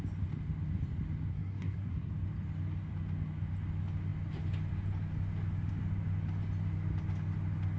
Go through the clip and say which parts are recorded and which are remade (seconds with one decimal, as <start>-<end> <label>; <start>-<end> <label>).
0.0-1.3 recorded; 1.3-2.1 remade; 2.1-7.8 recorded